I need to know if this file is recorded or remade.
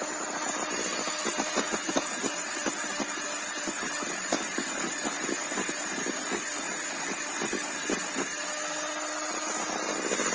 recorded